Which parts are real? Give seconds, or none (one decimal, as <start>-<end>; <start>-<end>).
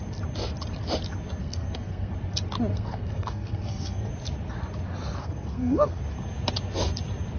0.0-1.4; 2.1-2.7; 4.1-5.2; 6.0-7.4